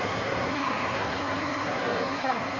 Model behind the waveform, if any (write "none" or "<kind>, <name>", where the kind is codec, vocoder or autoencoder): codec, SNAC